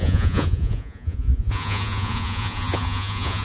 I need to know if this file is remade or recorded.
remade